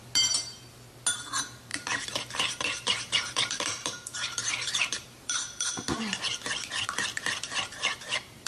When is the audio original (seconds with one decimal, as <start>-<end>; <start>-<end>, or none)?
0.0-1.7; 5.7-7.1